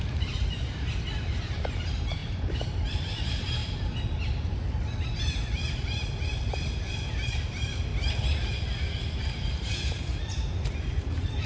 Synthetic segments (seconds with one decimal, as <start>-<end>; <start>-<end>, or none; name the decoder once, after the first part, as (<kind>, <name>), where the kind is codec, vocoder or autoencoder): 0.0-3.6 (vocoder, BigVGAN v2); 6.3-7.9; 9.2-11.5